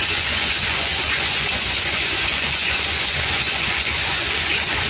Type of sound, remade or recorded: remade